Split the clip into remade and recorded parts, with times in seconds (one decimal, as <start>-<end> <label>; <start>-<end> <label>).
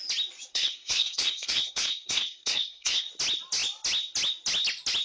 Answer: 0.0-0.5 recorded; 0.5-3.1 remade; 3.1-5.0 recorded